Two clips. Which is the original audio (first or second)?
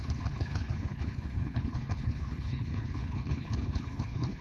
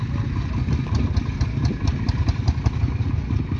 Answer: second